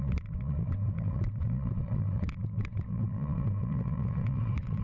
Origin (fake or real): fake